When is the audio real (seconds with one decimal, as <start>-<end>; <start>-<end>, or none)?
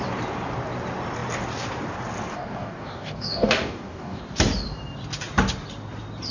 0.0-2.3; 4.2-6.3